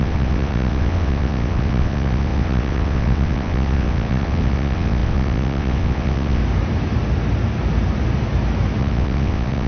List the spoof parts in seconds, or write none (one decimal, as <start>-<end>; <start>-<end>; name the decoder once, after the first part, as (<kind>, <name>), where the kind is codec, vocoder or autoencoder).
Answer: 0.0-6.4 (vocoder, WaveNeXt); 8.8-9.7

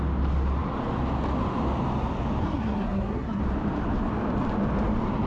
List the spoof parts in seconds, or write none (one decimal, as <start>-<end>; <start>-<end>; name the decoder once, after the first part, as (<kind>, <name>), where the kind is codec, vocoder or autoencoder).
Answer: 2.4-3.4 (codec, SNAC)